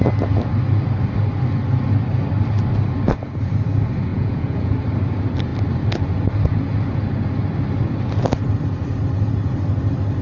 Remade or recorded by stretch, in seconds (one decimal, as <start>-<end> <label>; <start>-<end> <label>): 0.0-4.1 recorded; 4.1-4.7 remade; 4.7-10.2 recorded